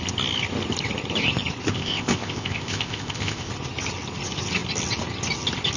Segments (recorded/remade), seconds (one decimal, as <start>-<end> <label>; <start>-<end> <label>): 0.0-1.7 recorded; 1.7-3.5 remade; 3.5-5.8 recorded